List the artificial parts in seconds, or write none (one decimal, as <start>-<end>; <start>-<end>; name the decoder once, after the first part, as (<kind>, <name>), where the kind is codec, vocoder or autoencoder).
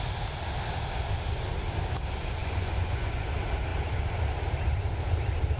2.4-3.3 (vocoder, Vocos)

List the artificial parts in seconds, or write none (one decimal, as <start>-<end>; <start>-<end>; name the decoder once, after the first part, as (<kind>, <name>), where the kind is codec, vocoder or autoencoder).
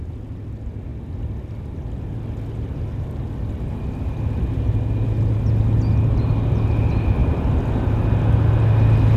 none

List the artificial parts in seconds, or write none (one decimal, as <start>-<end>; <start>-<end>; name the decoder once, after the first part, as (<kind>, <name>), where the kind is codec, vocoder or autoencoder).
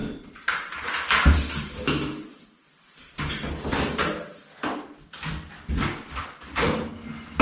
0.0-4.4 (vocoder, BigVGAN v2); 6.2-6.9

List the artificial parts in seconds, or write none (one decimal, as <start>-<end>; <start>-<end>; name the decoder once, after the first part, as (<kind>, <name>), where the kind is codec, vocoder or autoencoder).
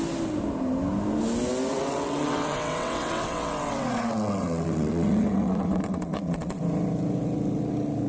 1.7-6.6 (vocoder, WaveNeXt)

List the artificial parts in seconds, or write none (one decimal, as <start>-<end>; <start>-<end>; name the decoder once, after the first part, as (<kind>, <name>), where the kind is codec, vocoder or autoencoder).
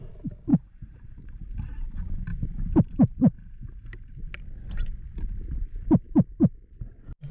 0.5-1.2 (vocoder, Vocos)